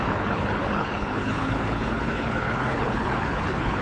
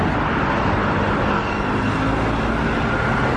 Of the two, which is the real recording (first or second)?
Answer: second